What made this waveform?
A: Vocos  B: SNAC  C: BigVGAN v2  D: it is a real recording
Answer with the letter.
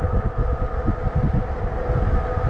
D